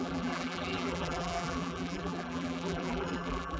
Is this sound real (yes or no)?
no